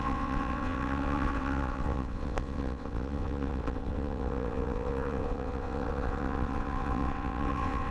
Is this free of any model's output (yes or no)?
no